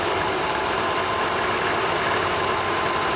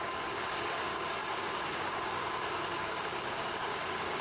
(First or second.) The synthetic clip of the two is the second